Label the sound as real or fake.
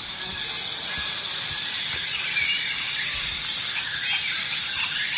real